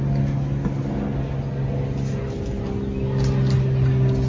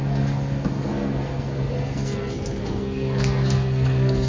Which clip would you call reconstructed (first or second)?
second